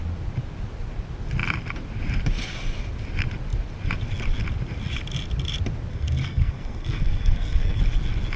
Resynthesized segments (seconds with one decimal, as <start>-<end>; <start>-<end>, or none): 5.9-7.8